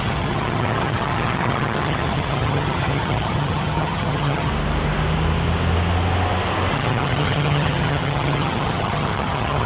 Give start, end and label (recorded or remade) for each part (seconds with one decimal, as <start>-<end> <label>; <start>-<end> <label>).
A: 0.0-4.5 remade; 4.5-6.7 recorded; 6.7-9.7 remade